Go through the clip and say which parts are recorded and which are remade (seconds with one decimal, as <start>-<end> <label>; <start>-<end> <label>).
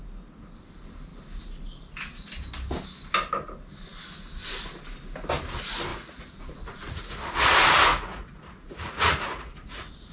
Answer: 0.0-5.9 recorded; 5.9-7.0 remade; 7.0-7.9 recorded; 7.9-10.1 remade